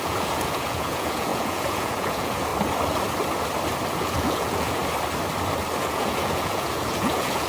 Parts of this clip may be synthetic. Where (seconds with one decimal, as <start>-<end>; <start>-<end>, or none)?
0.0-2.5; 3.9-4.8; 5.8-7.5